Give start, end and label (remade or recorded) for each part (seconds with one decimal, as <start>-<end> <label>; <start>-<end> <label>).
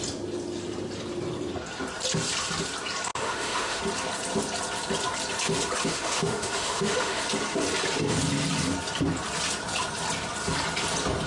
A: 0.0-3.1 recorded; 3.1-3.8 remade; 3.8-5.9 recorded; 5.9-7.2 remade; 7.2-11.3 recorded